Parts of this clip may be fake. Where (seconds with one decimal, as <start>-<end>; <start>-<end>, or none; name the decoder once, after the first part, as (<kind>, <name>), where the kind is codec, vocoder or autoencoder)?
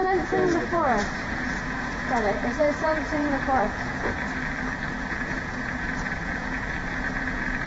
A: 0.0-4.4 (vocoder, Vocos); 5.0-7.7